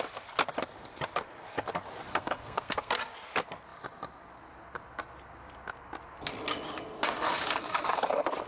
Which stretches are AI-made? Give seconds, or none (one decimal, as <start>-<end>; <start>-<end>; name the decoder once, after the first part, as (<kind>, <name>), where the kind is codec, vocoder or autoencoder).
2.1-2.9 (codec, SNAC)